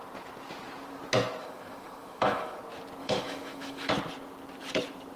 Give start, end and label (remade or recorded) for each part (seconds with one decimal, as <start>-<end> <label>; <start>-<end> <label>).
0.0-1.4 recorded; 1.4-2.6 remade; 2.6-3.0 recorded; 3.0-3.9 remade; 3.9-5.2 recorded